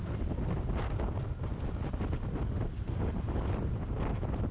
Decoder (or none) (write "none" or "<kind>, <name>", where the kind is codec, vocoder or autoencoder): none